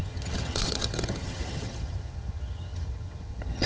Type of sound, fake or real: fake